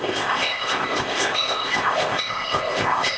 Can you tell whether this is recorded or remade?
remade